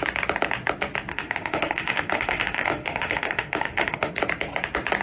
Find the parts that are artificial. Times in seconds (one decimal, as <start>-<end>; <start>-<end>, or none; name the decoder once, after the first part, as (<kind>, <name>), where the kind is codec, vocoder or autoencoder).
1.1-4.1 (autoencoder, DAC-VAE)